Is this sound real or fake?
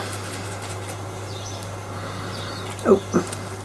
real